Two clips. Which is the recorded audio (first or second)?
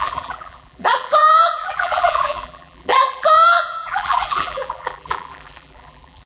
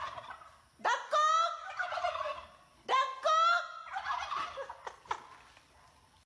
second